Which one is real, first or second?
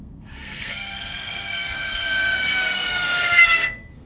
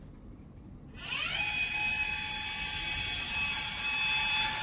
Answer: second